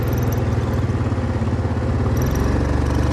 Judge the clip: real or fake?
real